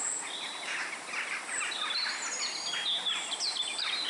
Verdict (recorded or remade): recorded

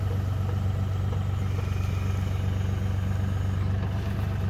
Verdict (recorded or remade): recorded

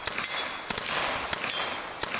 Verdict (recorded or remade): recorded